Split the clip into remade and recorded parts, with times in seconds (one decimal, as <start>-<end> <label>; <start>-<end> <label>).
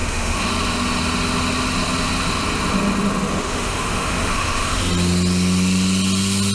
0.0-0.5 remade; 0.5-3.3 recorded; 3.3-4.8 remade; 4.8-6.5 recorded